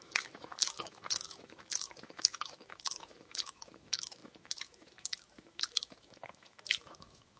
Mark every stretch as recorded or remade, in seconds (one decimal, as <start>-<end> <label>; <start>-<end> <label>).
0.0-7.4 remade